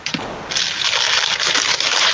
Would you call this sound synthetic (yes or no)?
no